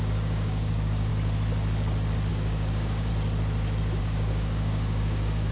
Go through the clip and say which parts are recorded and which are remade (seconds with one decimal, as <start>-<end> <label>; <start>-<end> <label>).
0.0-1.1 remade; 1.1-2.3 recorded; 2.3-3.1 remade; 3.1-4.0 recorded; 4.0-5.5 remade

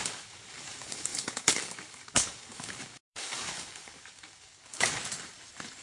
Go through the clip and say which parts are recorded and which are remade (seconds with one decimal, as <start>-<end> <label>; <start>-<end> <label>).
0.0-5.0 remade; 5.0-5.8 recorded

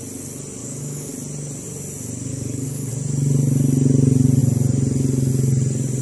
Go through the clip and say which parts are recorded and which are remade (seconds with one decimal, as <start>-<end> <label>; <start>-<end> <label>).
0.0-0.6 recorded; 0.6-1.1 remade; 1.1-2.3 recorded; 2.3-2.9 remade; 2.9-6.0 recorded

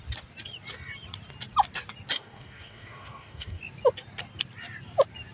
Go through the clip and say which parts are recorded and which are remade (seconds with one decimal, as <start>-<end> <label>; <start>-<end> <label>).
0.0-2.1 recorded; 2.1-3.6 remade; 3.6-5.3 recorded

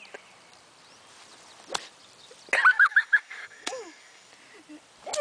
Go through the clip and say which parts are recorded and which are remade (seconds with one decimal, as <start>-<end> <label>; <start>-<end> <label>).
0.0-2.7 recorded; 2.7-4.3 remade; 4.3-5.2 recorded

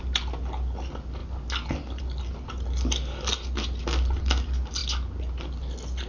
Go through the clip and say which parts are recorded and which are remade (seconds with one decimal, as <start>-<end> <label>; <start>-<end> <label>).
0.0-6.1 recorded

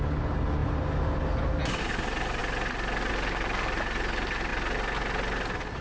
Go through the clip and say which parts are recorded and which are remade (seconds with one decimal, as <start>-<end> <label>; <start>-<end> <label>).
0.0-5.8 recorded